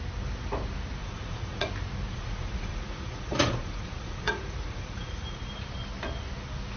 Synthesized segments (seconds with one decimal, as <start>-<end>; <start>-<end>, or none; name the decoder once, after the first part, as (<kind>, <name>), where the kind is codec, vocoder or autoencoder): 1.0-1.7 (vocoder, Vocos); 2.1-5.4